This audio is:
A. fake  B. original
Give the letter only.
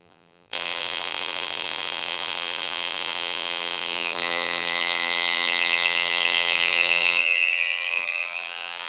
A